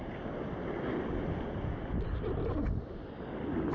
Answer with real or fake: real